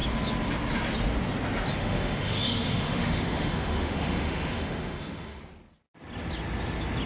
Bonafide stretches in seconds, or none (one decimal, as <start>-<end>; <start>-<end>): 0.0-1.8; 5.4-7.1